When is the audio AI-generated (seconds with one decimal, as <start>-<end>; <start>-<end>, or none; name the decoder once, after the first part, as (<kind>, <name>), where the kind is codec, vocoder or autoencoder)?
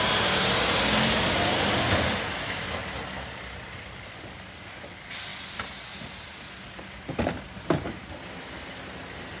none